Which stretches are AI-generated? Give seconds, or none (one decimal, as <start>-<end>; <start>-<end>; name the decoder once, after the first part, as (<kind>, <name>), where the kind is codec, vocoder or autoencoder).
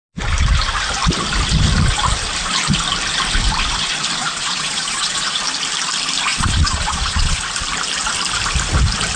4.2-5.4 (vocoder, Vocos); 6.3-7.4